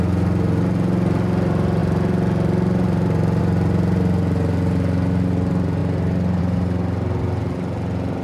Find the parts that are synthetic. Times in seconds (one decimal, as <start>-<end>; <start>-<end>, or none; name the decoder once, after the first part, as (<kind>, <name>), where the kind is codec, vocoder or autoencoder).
none